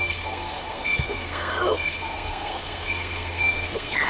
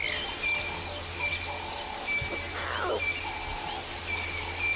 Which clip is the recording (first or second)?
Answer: second